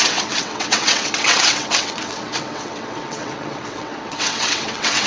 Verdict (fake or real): fake